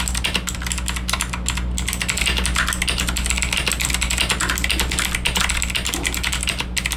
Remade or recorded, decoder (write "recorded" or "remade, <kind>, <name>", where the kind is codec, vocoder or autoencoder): recorded